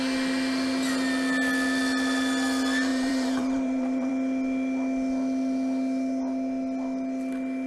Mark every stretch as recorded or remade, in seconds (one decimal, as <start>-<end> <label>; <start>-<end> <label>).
0.0-2.9 recorded; 2.9-4.1 remade; 4.1-7.7 recorded